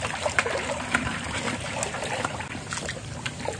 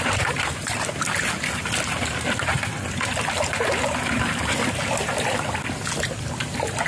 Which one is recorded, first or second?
second